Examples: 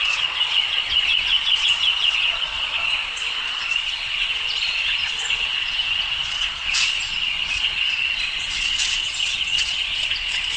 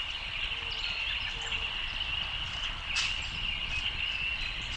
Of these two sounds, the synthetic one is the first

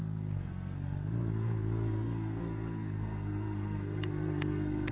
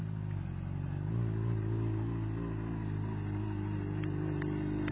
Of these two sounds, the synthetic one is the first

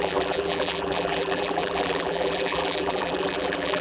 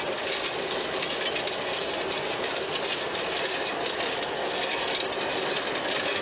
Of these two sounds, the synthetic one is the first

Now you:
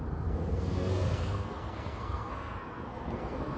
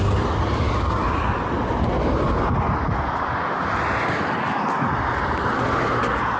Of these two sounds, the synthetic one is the first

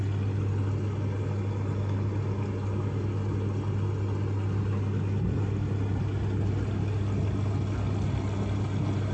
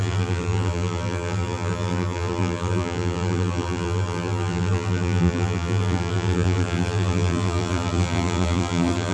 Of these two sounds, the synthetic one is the second